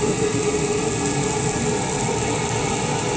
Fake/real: real